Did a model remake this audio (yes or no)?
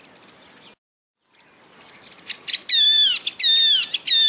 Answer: no